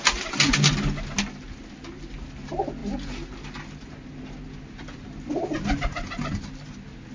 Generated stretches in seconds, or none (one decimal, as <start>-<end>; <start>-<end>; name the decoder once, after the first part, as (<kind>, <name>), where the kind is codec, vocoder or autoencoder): none